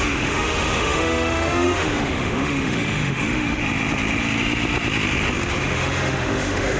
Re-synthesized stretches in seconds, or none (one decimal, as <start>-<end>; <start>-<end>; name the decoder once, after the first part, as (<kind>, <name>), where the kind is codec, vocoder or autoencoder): 0.0-3.6 (autoencoder, DAC-VAE); 5.6-6.8